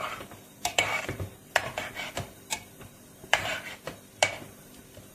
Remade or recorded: remade